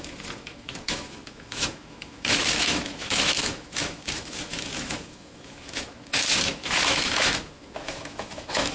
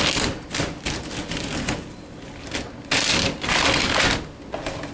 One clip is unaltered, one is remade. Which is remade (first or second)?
first